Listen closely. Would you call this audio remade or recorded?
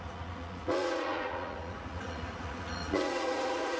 remade